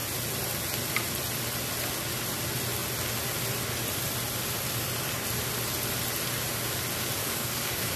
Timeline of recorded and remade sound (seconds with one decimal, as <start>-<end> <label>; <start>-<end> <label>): 0.0-7.2 recorded; 7.2-8.0 remade